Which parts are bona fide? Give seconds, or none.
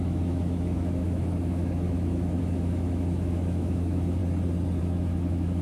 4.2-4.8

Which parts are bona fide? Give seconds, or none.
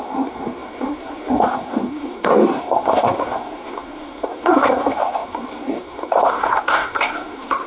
none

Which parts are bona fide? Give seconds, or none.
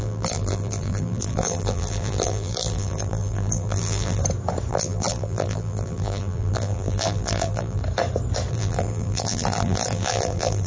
4.2-4.7; 7.8-8.5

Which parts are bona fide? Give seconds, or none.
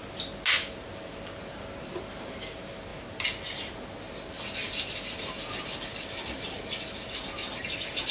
0.0-8.1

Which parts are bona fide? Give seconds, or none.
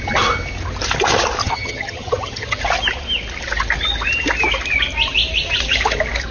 0.0-1.4; 2.6-6.3